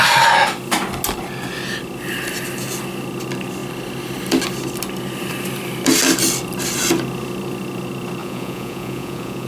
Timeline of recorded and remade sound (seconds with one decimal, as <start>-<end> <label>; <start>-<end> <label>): 0.0-8.2 recorded; 8.2-9.5 remade